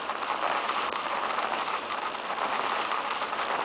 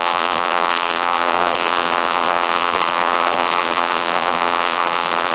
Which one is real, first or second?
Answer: first